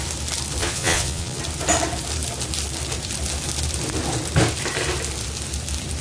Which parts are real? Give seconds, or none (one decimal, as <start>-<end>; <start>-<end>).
0.0-0.6; 1.4-6.0